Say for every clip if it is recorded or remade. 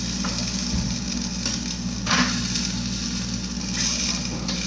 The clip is recorded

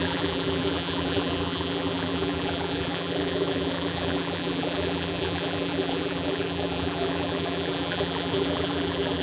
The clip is remade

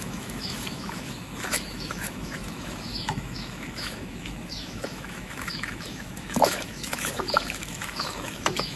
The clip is remade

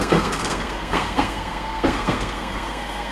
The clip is remade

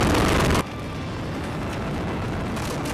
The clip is recorded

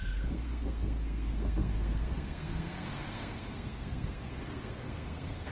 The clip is remade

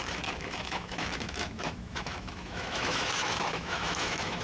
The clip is remade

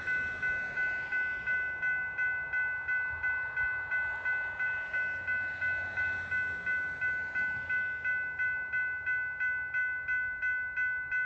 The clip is recorded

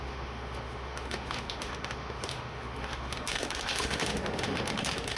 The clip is remade